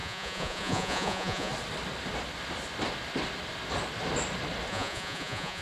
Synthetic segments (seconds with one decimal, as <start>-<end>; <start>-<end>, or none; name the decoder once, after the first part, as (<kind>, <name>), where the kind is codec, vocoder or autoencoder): 0.0-1.5 (vocoder, Vocos); 4.7-5.6